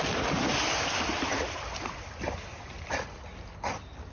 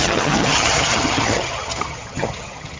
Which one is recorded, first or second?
first